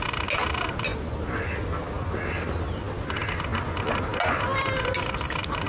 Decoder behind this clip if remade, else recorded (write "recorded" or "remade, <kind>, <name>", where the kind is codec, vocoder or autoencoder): recorded